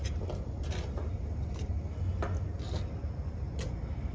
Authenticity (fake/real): real